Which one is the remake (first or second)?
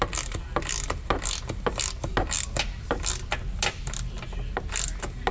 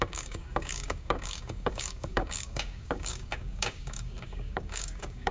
second